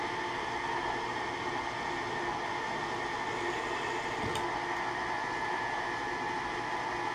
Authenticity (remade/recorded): recorded